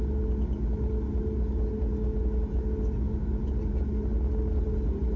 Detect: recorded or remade recorded